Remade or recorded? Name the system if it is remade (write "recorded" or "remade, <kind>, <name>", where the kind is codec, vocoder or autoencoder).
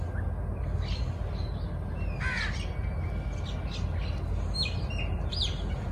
recorded